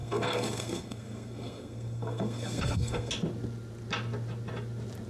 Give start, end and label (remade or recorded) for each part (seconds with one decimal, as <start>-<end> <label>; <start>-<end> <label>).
0.0-3.1 remade; 3.1-5.1 recorded